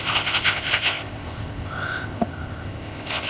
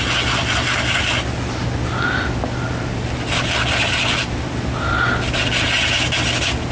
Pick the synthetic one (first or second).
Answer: first